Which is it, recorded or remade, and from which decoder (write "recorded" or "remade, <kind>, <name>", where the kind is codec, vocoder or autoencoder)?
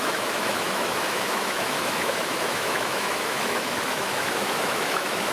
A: remade, autoencoder, DAC-VAE